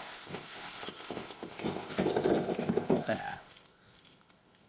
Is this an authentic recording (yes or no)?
no